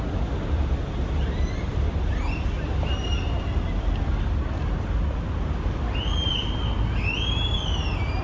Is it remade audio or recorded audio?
recorded